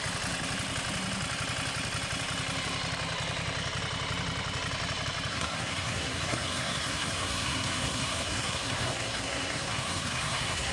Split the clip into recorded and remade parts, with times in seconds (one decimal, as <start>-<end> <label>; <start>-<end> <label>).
0.0-5.3 recorded; 5.3-10.7 remade